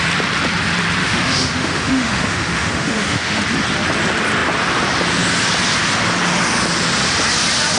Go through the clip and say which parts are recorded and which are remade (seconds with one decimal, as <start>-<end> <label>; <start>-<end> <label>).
0.0-1.0 recorded; 1.0-3.4 remade; 3.4-7.8 recorded